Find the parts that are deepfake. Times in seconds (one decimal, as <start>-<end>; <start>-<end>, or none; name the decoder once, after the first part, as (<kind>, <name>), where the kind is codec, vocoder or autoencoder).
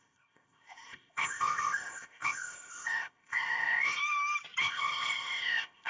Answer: 0.0-4.0 (codec, ZipCodec); 4.6-5.9